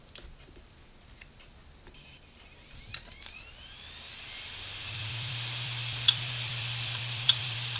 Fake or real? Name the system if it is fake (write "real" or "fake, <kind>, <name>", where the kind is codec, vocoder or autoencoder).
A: fake, vocoder, BigVGAN v2